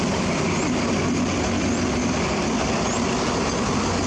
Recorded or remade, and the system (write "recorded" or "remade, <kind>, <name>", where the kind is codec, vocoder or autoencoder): recorded